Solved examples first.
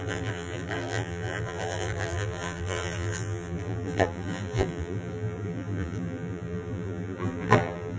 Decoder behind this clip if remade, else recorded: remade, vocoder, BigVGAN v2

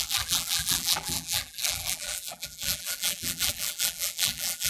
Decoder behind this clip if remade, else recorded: remade, vocoder, BigVGAN v2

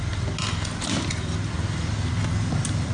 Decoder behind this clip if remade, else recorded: recorded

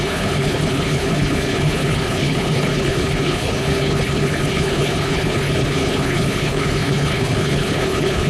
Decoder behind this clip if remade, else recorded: remade, codec, HILCodec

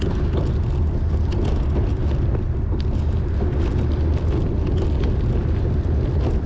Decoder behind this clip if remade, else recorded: recorded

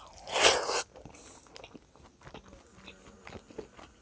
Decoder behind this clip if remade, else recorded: recorded